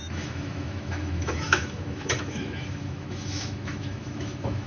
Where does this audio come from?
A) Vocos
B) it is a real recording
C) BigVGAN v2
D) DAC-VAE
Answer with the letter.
D